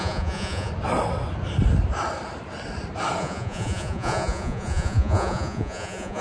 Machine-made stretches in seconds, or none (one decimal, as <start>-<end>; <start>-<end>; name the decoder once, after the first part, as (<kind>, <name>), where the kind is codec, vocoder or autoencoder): 0.0-0.7 (vocoder, Vocos); 3.2-6.2